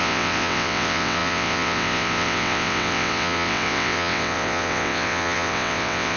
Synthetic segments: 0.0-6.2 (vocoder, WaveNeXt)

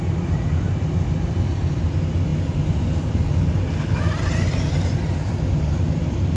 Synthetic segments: none

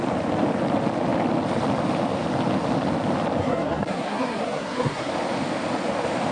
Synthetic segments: 3.4-5.1 (codec, SNAC)

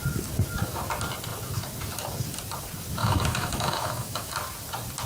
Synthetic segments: 3.0-4.3 (autoencoder, DAC-VAE)

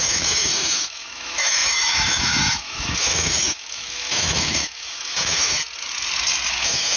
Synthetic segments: 0.0-5.6 (autoencoder, DAC-VAE); 6.5-7.0

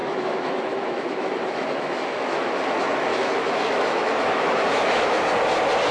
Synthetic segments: 0.0-2.6 (autoencoder, DAC-VAE); 3.1-5.2

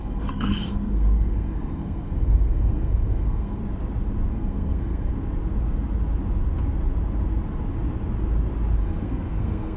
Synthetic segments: 0.0-3.6 (codec, SNAC); 4.3-5.1; 8.8-9.8

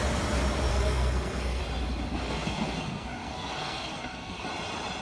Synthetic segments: 0.7-1.6 (codec, SNAC); 2.1-4.5